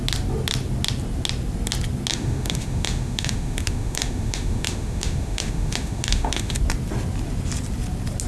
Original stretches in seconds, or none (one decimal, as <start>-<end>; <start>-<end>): 0.0-2.1; 6.6-8.3